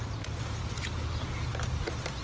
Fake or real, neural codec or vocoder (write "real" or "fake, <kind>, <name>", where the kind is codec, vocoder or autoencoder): real